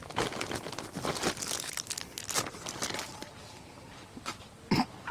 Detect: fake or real real